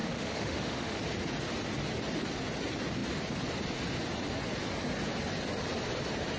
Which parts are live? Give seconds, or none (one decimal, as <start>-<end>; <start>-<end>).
1.0-6.4